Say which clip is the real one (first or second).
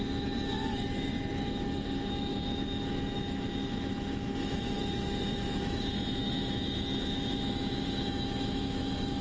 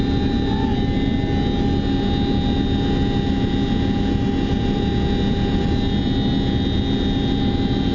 second